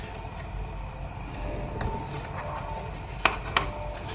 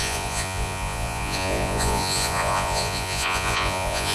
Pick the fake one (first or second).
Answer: second